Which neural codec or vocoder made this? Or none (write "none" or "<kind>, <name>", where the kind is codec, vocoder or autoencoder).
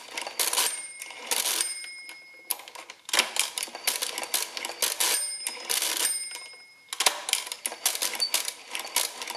none